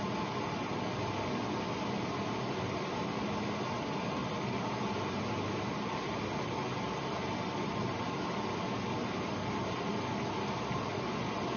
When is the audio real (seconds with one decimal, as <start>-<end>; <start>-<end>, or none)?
0.0-11.6